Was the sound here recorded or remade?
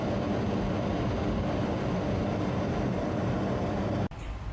recorded